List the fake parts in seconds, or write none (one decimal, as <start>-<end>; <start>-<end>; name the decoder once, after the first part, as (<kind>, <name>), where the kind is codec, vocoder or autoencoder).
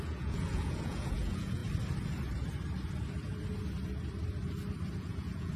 0.0-1.6 (vocoder, Vocos); 5.0-5.6